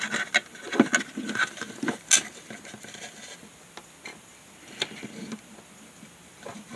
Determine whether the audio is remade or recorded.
recorded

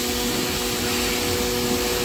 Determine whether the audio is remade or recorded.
recorded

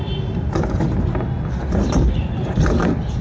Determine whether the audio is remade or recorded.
recorded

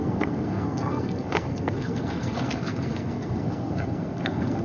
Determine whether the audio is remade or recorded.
remade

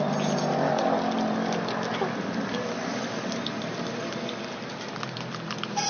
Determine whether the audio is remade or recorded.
recorded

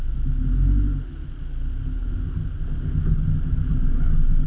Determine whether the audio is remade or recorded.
recorded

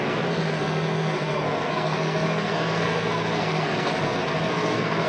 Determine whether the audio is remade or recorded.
remade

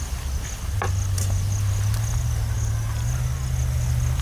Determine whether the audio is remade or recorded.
recorded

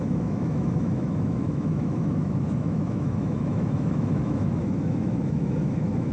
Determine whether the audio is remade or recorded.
remade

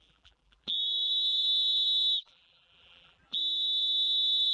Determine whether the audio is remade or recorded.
remade